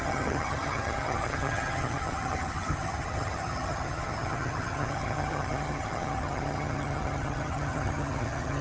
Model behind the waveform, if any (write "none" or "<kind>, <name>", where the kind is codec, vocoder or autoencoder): vocoder, HiFi-GAN